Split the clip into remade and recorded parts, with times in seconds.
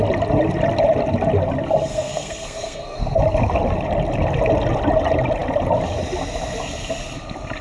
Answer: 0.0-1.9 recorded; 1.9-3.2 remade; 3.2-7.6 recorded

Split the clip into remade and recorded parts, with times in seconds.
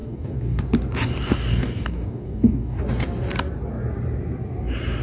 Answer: 0.0-0.6 remade; 0.6-1.5 recorded; 1.5-2.8 remade; 2.8-5.0 recorded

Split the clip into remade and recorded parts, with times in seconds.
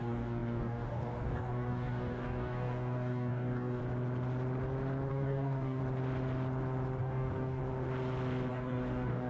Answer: 0.0-3.8 remade; 3.8-5.1 recorded; 5.1-5.8 remade; 5.8-7.0 recorded; 7.0-7.6 remade; 7.6-8.5 recorded; 8.5-9.3 remade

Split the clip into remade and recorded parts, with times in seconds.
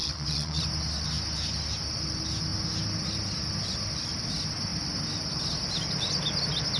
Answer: 0.0-0.6 remade; 0.6-6.8 recorded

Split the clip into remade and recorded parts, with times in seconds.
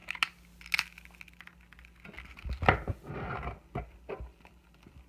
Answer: 0.0-5.1 recorded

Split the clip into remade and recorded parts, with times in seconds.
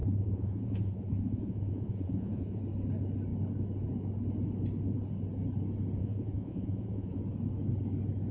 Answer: 0.0-2.6 remade; 2.6-6.0 recorded; 6.0-7.2 remade; 7.2-8.3 recorded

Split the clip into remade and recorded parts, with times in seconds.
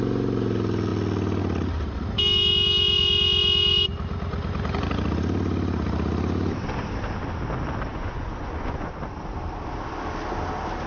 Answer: 0.0-7.9 recorded; 7.9-8.9 remade; 8.9-10.9 recorded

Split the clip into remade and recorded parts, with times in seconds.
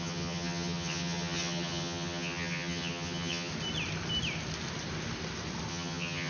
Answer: 0.0-3.5 remade; 3.5-5.7 recorded; 5.7-6.3 remade